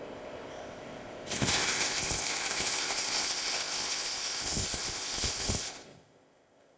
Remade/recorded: remade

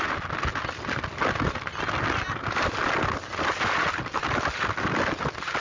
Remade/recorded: recorded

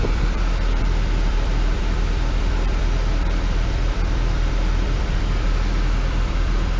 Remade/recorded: remade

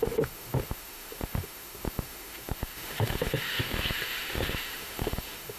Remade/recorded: remade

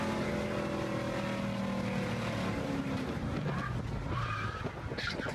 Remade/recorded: recorded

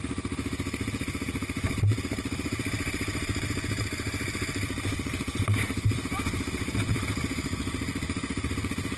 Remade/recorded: remade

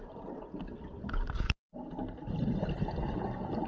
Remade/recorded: recorded